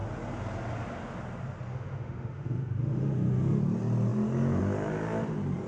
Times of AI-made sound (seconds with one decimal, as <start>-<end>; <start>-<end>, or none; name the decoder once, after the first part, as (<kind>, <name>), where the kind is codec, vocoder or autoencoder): 1.7-3.6 (autoencoder, DAC-VAE)